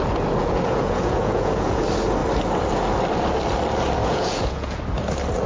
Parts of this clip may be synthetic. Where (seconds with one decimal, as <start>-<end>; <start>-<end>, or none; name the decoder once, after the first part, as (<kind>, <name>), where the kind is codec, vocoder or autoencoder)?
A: 0.4-1.8 (vocoder, Vocos); 4.0-4.8